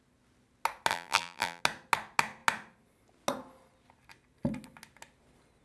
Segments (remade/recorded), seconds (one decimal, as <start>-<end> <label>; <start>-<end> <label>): 0.0-0.9 recorded; 0.9-1.6 remade; 1.6-5.6 recorded